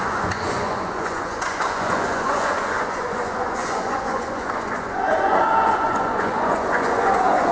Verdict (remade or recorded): remade